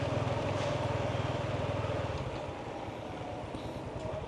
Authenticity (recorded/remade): recorded